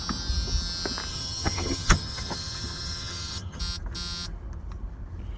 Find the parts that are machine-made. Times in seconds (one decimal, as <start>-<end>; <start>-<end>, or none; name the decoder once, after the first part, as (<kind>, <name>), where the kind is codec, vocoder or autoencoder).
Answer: 1.1-3.6 (vocoder, HiFi-GAN)